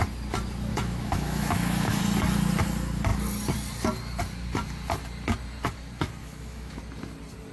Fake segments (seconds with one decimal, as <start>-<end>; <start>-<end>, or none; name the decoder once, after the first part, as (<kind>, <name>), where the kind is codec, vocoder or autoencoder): 0.7-2.0 (autoencoder, DAC-VAE); 6.2-6.8